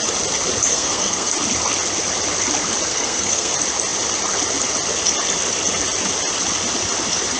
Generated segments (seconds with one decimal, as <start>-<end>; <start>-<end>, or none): 0.7-1.3; 2.9-3.5